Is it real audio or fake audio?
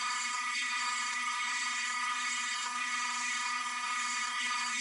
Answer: fake